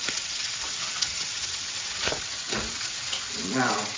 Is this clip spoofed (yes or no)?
yes